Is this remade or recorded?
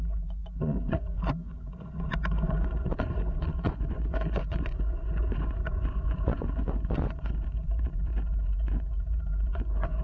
remade